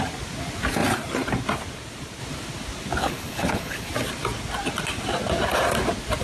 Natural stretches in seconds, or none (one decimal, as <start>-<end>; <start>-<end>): 0.0-3.0; 3.9-6.2